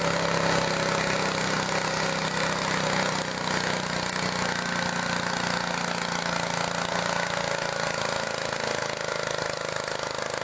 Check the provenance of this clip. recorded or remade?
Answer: recorded